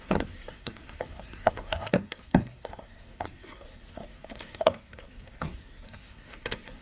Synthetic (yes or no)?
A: yes